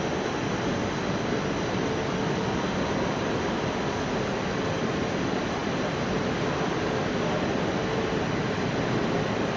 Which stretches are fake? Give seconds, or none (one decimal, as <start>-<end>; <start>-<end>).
none